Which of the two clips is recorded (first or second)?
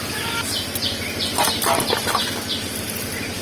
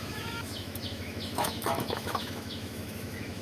first